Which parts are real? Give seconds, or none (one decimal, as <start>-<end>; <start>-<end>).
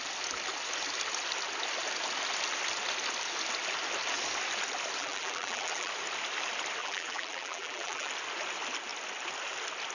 0.0-5.0; 5.9-6.8; 8.1-9.9